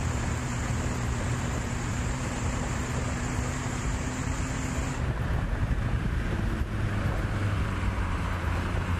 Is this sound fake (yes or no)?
yes